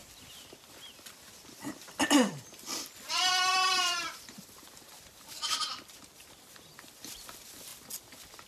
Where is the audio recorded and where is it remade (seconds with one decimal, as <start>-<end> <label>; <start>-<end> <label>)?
0.0-2.3 remade; 2.3-3.5 recorded; 3.5-6.0 remade; 6.0-8.5 recorded